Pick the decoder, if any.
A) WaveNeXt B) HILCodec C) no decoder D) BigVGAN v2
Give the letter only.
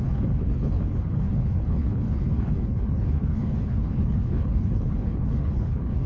B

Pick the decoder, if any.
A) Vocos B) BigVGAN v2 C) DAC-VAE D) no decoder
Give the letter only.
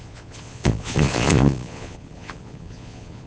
A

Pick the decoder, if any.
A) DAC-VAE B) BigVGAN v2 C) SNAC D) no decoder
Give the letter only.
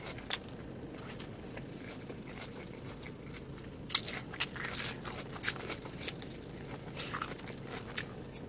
D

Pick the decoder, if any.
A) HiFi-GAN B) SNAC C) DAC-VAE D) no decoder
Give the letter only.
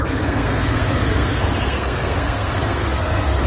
B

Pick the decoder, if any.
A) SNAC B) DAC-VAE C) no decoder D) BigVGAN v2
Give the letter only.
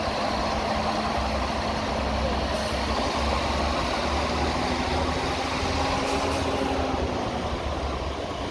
C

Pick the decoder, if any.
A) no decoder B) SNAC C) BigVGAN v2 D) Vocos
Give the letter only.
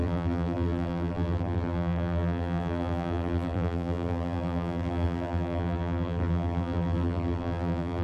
C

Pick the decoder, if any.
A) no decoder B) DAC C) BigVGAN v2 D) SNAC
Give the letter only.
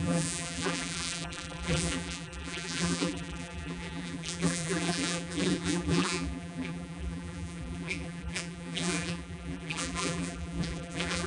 C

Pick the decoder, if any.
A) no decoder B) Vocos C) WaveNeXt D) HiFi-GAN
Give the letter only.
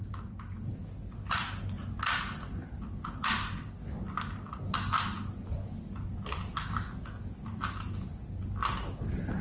A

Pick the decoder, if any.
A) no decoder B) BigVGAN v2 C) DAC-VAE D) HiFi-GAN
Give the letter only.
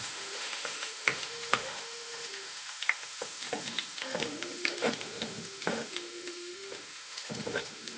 C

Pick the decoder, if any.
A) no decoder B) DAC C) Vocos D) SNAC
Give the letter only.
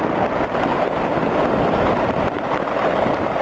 A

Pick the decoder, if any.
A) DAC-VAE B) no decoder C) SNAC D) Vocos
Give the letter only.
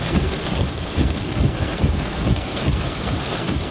C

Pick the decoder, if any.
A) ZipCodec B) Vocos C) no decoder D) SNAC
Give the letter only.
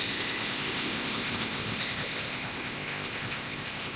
A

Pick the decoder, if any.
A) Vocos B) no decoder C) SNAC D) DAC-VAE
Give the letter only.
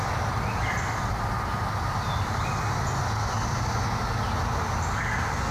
B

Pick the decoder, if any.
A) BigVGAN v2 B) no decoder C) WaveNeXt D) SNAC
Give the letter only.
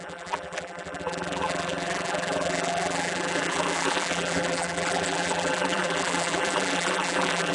A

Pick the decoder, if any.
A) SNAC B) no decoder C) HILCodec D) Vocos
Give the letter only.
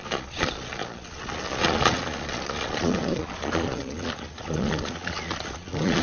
D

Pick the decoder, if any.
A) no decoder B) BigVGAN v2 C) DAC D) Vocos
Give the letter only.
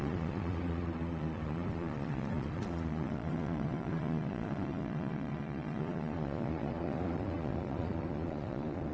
D